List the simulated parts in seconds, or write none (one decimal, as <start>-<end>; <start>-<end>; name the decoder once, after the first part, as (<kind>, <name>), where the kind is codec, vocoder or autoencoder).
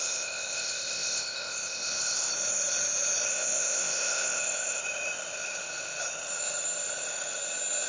0.0-2.3 (codec, ZipCodec); 3.3-4.8